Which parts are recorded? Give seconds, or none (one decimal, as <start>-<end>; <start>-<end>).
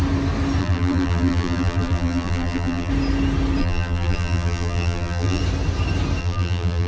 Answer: 0.0-0.6; 2.9-3.6; 5.4-6.2